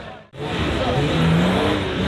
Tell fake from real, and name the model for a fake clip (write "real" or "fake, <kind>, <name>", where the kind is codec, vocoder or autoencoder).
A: real